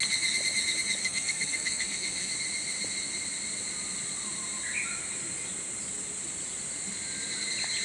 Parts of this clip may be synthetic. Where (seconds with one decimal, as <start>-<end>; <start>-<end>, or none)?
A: 1.0-2.3